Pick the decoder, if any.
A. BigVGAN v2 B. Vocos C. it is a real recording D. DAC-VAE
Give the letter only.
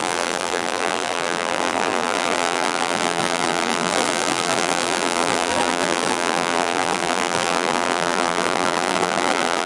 A